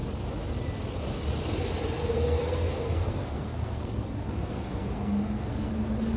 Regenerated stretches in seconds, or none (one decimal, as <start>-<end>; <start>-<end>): 2.0-5.7